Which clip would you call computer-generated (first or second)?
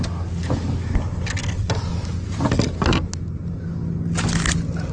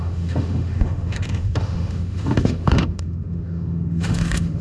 second